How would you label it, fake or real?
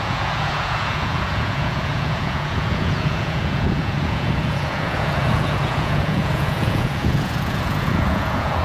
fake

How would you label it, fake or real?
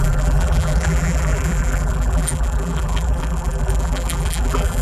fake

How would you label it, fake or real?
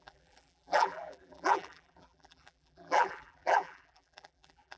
fake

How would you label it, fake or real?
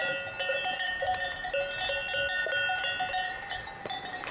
real